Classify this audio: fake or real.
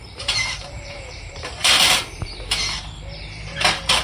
fake